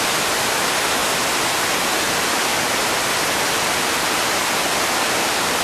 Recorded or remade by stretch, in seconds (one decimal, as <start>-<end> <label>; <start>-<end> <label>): 0.0-5.6 recorded